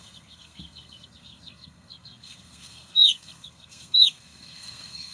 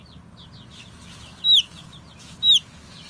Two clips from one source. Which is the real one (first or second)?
second